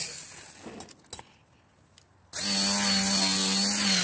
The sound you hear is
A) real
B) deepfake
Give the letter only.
A